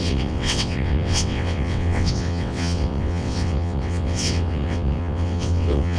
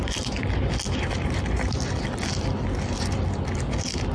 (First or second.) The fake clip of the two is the first